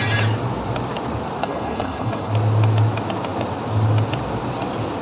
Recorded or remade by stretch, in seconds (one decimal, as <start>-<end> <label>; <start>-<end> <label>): 0.0-1.4 recorded; 1.4-2.3 remade; 2.3-5.0 recorded